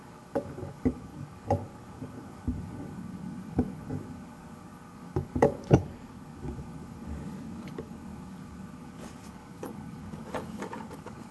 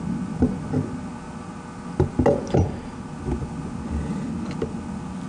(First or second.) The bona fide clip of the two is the second